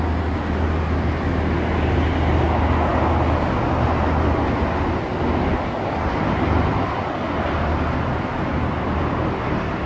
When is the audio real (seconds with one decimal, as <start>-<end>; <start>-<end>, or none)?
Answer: 0.0-9.9